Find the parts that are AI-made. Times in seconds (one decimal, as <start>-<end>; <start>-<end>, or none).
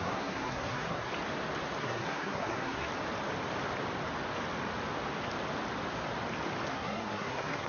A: 0.0-1.1; 1.8-2.9; 6.7-7.7